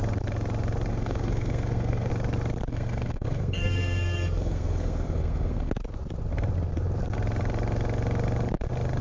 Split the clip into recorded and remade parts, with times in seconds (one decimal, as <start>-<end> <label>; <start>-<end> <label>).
0.0-0.9 recorded; 0.9-2.1 remade; 2.1-2.7 recorded; 2.7-5.7 remade; 5.7-9.0 recorded